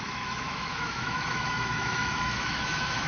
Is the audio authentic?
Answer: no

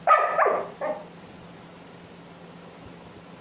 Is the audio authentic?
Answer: yes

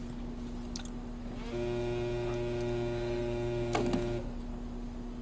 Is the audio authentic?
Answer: yes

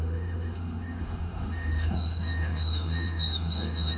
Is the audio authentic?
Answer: no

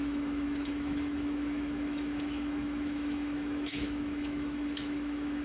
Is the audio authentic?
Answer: no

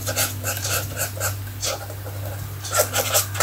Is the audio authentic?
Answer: yes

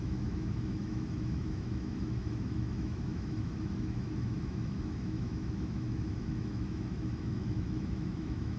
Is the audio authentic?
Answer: no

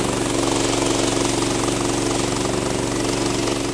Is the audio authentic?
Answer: yes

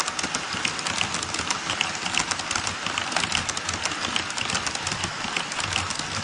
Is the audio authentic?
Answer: yes